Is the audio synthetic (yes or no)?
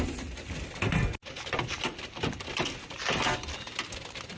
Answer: no